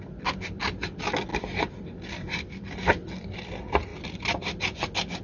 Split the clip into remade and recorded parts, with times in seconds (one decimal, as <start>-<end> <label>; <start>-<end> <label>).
0.0-1.3 recorded; 1.3-2.7 remade; 2.7-3.9 recorded; 3.9-4.6 remade; 4.6-5.2 recorded